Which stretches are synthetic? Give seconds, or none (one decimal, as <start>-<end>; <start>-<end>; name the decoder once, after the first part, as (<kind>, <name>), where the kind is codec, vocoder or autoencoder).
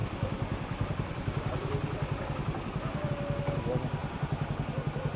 0.0-3.1 (vocoder, BigVGAN v2)